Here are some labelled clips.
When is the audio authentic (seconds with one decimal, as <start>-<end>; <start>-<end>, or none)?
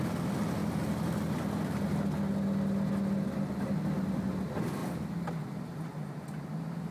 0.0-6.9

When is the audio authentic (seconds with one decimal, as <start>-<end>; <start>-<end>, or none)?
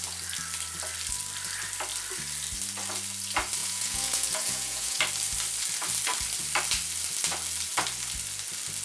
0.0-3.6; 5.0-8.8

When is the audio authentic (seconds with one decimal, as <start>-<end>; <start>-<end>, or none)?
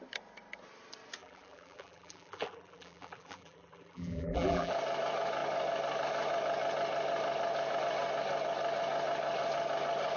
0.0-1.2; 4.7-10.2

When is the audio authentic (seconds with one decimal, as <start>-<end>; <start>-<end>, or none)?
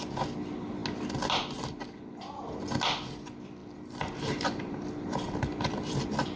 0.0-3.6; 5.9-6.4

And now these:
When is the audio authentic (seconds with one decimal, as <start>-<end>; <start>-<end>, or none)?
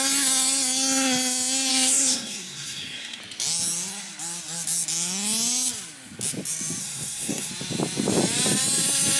0.0-1.7; 3.2-6.8; 7.5-9.2